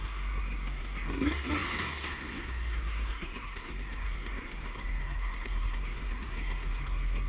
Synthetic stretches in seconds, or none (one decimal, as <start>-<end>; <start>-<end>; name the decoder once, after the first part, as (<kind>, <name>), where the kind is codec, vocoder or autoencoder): 0.0-7.3 (codec, SNAC)